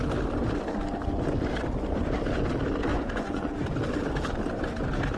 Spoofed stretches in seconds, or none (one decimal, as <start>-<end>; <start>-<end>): 2.9-3.5